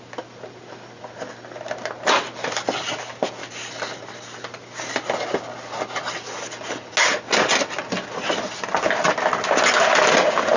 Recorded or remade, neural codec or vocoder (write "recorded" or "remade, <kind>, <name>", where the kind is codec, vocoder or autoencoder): recorded